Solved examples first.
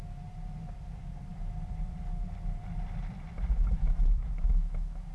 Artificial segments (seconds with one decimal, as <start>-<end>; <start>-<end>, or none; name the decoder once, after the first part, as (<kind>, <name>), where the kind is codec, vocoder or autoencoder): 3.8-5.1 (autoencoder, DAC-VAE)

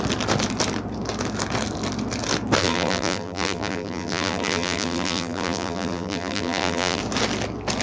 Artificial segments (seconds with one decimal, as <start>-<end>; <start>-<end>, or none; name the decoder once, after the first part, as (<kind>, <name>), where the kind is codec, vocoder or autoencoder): 2.6-7.0 (vocoder, BigVGAN v2)

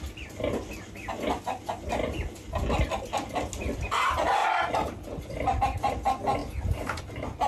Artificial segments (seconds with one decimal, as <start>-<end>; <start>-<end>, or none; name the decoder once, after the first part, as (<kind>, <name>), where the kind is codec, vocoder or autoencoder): none

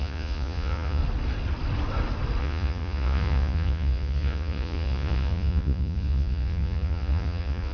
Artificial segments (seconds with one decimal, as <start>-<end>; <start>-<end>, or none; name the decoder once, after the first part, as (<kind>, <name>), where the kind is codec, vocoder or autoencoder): 0.0-1.0 (vocoder, Vocos); 2.4-7.7